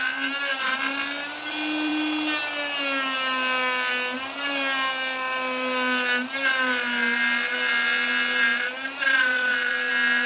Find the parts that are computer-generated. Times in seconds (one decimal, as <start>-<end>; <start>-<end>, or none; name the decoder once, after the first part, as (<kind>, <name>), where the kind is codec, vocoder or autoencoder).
none